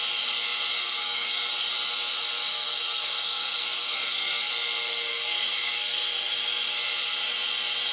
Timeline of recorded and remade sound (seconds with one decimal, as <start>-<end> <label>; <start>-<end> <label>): 0.0-0.8 recorded; 0.8-1.5 remade; 1.5-2.5 recorded; 2.5-4.5 remade; 4.5-5.1 recorded; 5.1-6.3 remade; 6.3-7.9 recorded